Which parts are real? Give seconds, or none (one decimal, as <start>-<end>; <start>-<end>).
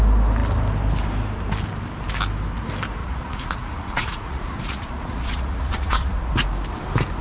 0.0-3.0; 6.3-7.2